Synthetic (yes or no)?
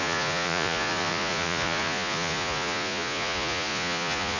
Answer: yes